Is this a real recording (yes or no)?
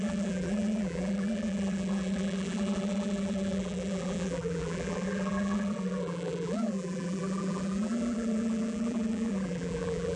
no